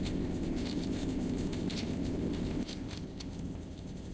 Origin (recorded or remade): remade